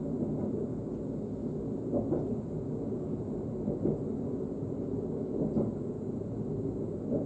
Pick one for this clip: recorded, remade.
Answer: recorded